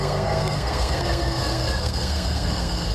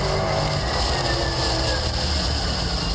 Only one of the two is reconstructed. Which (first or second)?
first